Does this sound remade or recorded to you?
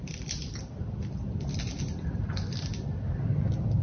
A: recorded